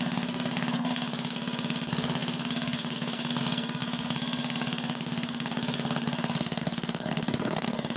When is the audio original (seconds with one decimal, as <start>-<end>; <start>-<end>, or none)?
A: none